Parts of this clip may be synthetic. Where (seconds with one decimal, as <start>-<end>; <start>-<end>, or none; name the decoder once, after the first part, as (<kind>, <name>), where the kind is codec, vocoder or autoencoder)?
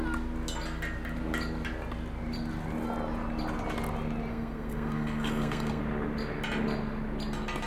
4.3-5.8 (codec, SNAC)